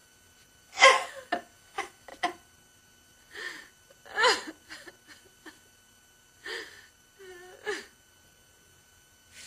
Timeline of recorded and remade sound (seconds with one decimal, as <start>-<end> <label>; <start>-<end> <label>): 0.0-9.5 recorded